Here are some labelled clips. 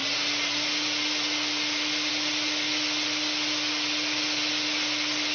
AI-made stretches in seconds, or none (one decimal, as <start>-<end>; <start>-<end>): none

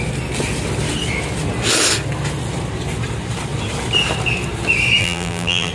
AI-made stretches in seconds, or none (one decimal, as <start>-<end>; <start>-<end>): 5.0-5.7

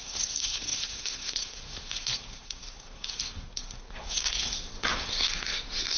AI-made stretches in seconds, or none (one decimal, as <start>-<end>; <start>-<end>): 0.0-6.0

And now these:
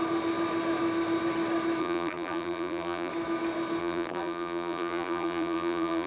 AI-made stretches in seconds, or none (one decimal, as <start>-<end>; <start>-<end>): 1.8-3.1; 3.8-6.1

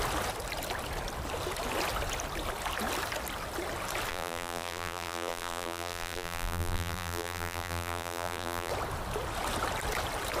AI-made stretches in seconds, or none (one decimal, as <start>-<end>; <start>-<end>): 4.1-8.7

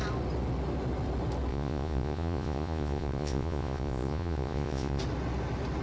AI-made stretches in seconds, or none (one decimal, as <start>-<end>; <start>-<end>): 1.5-5.0

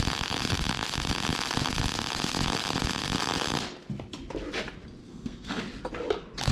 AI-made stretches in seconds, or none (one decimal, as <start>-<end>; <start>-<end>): 5.0-5.6

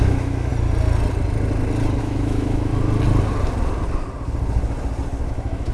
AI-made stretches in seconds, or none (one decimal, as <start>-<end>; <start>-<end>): 0.0-0.5; 2.0-2.7; 5.3-5.7